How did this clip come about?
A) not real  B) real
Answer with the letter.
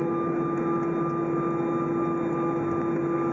B